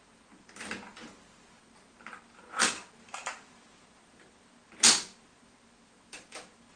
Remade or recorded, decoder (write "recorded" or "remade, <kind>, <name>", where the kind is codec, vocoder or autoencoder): recorded